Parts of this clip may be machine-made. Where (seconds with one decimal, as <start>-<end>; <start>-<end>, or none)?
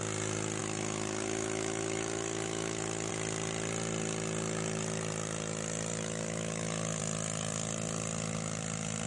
0.6-3.1; 5.9-7.0